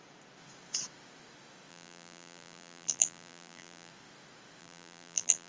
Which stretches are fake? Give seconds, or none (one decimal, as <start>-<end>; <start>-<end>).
1.7-3.9; 4.6-5.5